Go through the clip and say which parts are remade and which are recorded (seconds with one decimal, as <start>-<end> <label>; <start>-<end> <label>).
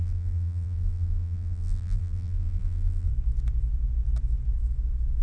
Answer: 0.0-3.1 remade; 3.1-5.2 recorded